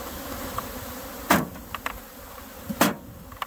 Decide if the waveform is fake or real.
real